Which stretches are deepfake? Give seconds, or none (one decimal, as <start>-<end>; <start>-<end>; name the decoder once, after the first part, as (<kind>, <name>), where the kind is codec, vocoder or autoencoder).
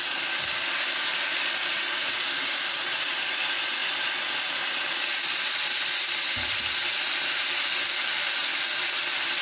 none